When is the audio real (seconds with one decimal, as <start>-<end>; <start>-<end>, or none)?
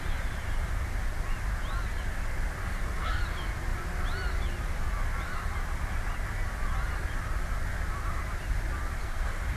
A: 0.0-2.6; 3.2-9.0